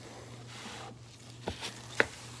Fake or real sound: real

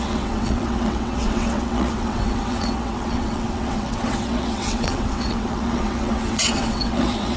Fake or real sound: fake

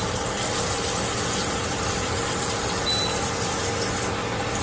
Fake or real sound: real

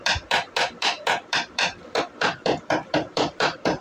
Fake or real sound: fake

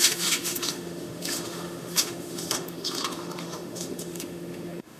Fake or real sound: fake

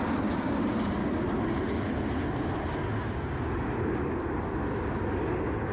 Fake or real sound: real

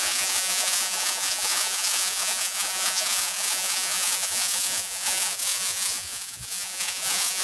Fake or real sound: fake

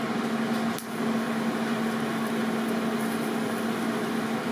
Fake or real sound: real